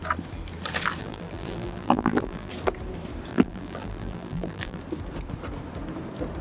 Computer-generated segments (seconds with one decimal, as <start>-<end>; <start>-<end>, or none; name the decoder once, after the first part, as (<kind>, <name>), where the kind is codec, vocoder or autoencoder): 1.0-2.5 (vocoder, BigVGAN v2); 3.3-4.8